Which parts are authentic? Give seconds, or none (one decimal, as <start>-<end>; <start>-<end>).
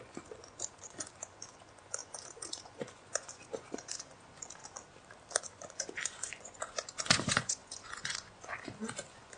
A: 4.6-5.4